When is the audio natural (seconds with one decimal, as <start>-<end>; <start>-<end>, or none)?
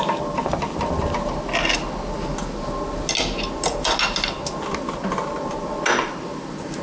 0.0-6.8